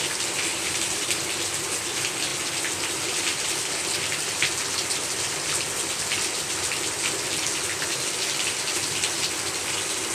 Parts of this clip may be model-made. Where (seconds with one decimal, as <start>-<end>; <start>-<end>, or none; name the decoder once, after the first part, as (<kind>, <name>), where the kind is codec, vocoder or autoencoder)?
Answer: 0.5-1.1 (vocoder, BigVGAN v2)